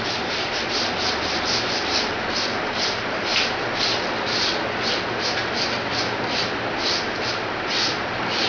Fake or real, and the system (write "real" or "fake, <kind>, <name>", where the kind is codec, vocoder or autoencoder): real